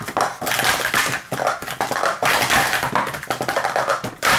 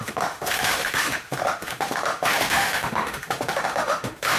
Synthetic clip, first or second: second